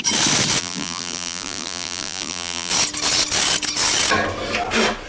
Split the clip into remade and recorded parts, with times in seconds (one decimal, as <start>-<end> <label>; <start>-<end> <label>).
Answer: 0.0-0.6 recorded; 0.6-2.7 remade; 2.7-5.1 recorded